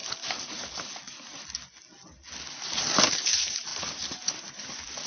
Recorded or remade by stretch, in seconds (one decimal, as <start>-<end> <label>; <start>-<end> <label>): 0.0-3.1 recorded; 3.1-5.1 remade